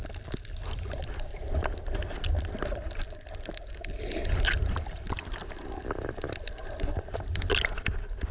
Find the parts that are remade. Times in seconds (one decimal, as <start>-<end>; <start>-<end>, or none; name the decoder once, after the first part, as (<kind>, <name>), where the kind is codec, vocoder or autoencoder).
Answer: 0.6-1.4 (vocoder, BigVGAN v2); 6.6-7.5